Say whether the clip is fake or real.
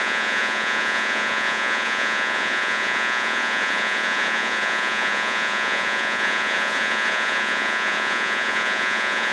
fake